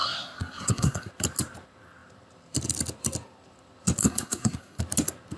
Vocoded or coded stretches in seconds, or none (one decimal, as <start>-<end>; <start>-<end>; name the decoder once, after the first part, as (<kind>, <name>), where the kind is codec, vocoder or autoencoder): 0.0-1.1 (codec, SNAC); 4.0-4.8